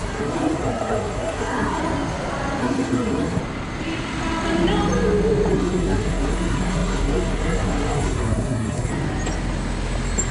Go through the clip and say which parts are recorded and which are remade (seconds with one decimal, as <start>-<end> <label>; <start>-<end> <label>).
0.0-1.8 remade; 1.8-2.6 recorded; 2.6-3.4 remade; 3.4-5.5 recorded; 5.5-8.9 remade; 8.9-10.3 recorded